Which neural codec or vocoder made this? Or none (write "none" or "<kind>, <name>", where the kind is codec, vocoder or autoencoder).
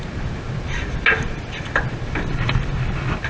none